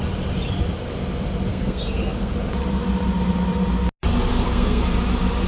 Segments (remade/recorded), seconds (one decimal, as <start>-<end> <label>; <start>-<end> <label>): 0.0-1.5 recorded; 1.5-2.3 remade; 2.3-4.3 recorded; 4.3-4.8 remade; 4.8-5.5 recorded